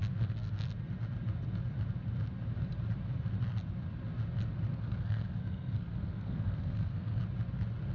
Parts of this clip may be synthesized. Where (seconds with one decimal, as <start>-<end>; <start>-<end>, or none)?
0.0-0.5; 4.7-7.2